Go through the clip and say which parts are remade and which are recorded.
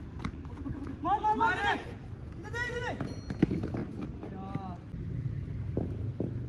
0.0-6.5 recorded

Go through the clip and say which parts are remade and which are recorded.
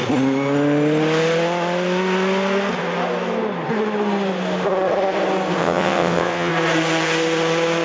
0.0-5.6 recorded; 5.6-6.5 remade; 6.5-7.8 recorded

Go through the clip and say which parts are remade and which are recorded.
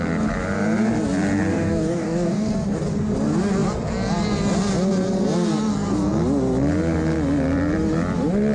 0.0-1.5 recorded; 1.5-2.5 remade; 2.5-8.5 recorded